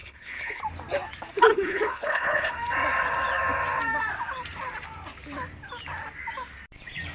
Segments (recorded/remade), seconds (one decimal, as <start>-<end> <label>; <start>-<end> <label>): 0.0-0.6 remade; 0.6-1.5 recorded; 1.5-2.5 remade; 2.5-7.1 recorded